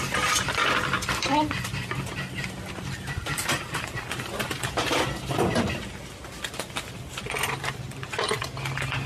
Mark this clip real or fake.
real